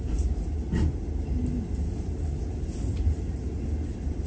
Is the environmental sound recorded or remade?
recorded